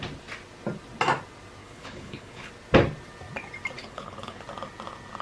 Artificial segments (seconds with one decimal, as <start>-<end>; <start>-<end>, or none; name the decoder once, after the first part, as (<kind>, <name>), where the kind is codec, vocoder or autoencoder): 1.6-2.5 (codec, HILCodec); 3.8-4.4